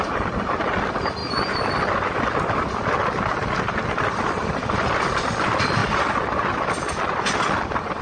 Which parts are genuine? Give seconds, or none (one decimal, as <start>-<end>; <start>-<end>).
0.0-8.0